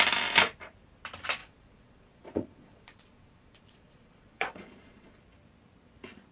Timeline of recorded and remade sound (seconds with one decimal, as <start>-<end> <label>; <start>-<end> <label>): 0.0-1.4 recorded; 1.4-5.2 remade; 5.2-6.3 recorded